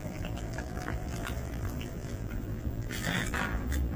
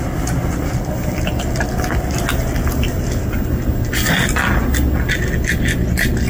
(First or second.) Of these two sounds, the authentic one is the second